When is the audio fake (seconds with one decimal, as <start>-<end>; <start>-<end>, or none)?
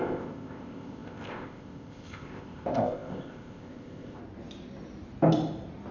0.0-4.2